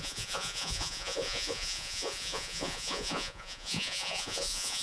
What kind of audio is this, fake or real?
fake